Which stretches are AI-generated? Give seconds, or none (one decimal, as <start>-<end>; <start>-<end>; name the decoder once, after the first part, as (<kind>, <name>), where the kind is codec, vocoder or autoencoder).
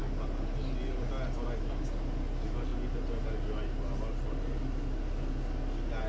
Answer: none